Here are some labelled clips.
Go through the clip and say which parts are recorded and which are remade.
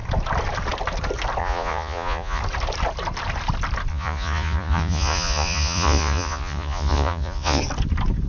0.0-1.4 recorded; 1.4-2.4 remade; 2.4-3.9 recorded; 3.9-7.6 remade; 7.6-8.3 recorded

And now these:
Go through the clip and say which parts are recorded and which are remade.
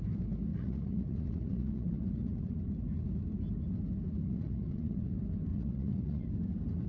0.0-0.5 recorded; 0.5-2.6 remade; 2.6-4.2 recorded; 4.2-5.1 remade; 5.1-5.5 recorded; 5.5-6.3 remade; 6.3-6.9 recorded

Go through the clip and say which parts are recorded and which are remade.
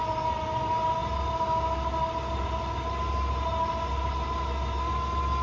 0.0-5.4 recorded